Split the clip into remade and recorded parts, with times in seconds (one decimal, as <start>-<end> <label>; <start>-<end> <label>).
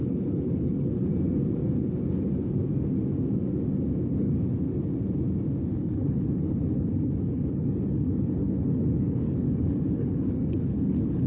0.0-1.1 remade; 1.1-4.1 recorded; 4.1-4.5 remade; 4.5-5.7 recorded; 5.7-11.3 remade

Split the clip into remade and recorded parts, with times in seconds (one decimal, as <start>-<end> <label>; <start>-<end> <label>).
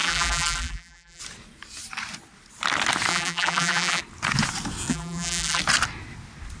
0.0-1.2 remade; 1.2-3.1 recorded; 3.1-4.0 remade; 4.0-4.9 recorded; 4.9-5.6 remade; 5.6-6.6 recorded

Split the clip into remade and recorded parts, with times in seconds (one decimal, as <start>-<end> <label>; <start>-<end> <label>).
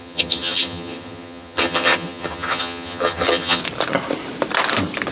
0.0-3.6 remade; 3.6-5.1 recorded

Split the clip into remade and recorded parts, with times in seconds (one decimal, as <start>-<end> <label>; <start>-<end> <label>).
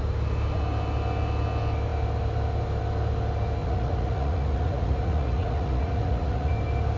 0.0-3.6 recorded; 3.6-6.5 remade; 6.5-7.0 recorded